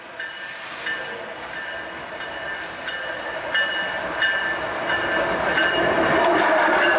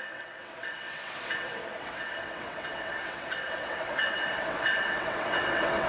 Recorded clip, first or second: first